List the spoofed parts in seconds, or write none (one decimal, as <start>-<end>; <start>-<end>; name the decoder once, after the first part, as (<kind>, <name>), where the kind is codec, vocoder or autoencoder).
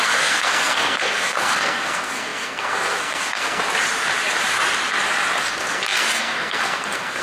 0.0-3.6 (codec, SNAC); 5.4-7.2